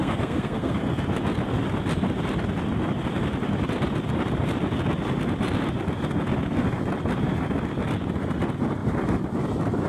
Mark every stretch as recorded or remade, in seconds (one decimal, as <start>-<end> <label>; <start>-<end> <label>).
0.0-0.8 remade; 0.8-9.9 recorded